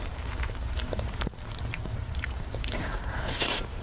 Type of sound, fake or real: fake